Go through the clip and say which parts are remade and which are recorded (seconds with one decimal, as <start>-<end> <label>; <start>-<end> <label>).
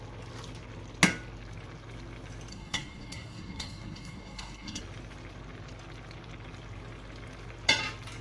0.0-2.5 recorded; 2.5-4.8 remade; 4.8-8.2 recorded